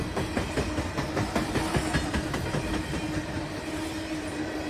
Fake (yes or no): no